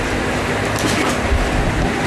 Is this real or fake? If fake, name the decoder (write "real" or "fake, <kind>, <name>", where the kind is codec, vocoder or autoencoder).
real